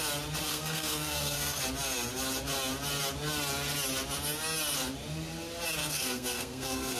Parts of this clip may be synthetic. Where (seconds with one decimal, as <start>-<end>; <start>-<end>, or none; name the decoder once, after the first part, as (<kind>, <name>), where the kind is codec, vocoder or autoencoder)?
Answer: 0.5-1.6 (codec, SNAC); 5.8-7.0